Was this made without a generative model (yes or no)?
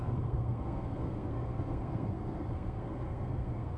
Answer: no